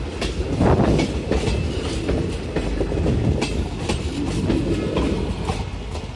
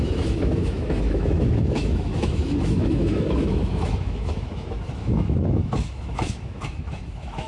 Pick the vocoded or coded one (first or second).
second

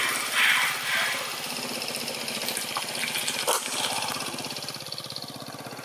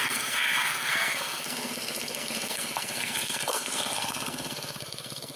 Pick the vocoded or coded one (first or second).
second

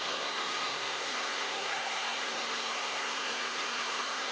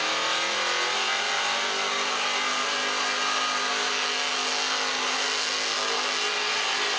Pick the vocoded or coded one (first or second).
first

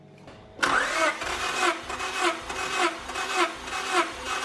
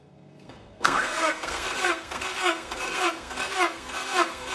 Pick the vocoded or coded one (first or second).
second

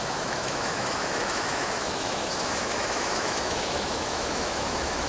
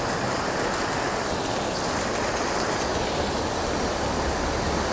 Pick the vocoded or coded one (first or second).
first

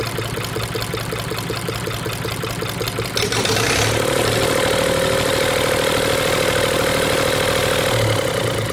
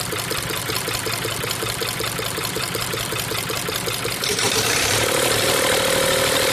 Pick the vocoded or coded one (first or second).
second